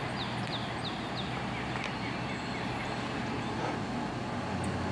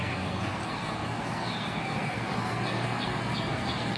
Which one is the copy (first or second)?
second